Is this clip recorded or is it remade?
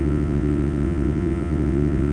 remade